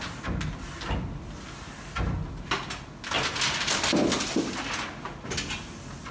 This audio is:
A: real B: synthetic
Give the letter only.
A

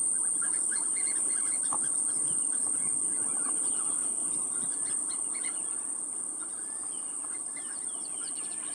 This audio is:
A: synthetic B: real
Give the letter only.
B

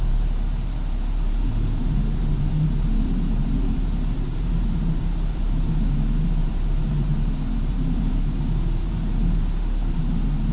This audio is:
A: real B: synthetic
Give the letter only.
B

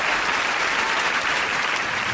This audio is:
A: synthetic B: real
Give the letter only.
A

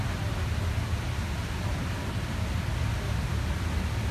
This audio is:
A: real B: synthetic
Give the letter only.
A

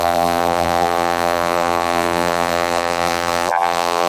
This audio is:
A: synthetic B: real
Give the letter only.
A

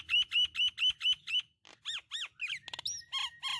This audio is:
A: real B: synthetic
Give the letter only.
A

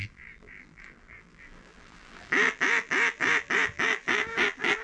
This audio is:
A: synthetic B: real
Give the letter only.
A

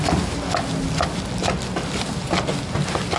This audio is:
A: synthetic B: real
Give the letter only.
B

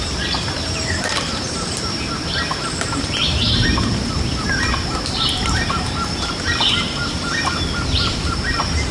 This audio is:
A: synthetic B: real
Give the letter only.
A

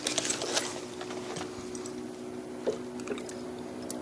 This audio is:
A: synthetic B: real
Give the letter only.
B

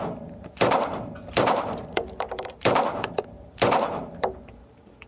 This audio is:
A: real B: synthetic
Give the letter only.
B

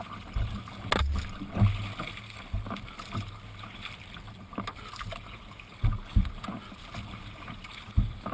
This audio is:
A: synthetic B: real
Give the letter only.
B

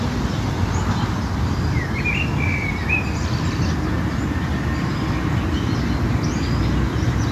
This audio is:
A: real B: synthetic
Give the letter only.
A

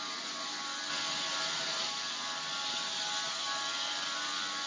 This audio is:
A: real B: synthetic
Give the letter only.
A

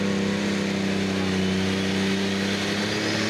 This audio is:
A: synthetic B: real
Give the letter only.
B